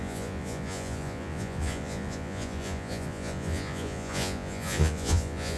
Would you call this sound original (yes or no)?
no